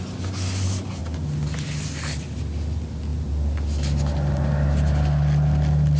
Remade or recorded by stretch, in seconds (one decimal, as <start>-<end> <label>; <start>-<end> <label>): 0.0-6.0 recorded